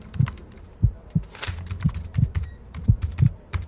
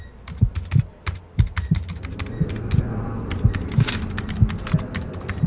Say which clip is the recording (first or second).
second